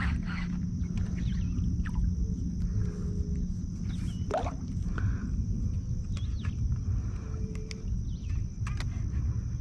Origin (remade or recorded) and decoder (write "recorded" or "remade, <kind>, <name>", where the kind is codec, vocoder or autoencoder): recorded